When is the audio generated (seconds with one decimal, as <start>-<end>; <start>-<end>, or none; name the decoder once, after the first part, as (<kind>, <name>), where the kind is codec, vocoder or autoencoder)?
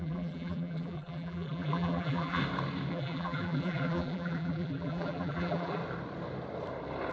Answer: 0.0-2.4 (vocoder, BigVGAN v2); 2.9-5.8